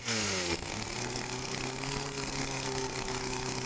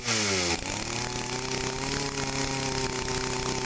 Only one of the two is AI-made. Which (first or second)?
first